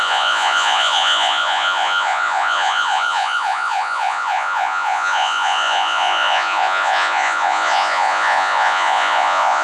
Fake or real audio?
fake